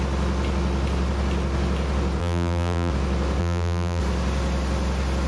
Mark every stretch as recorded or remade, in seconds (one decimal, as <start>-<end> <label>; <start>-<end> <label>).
0.0-2.2 recorded; 2.2-2.9 remade; 2.9-3.4 recorded; 3.4-4.0 remade; 4.0-5.3 recorded